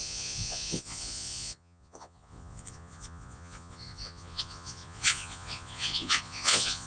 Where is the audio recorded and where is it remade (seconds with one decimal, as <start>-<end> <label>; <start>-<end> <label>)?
0.0-6.9 remade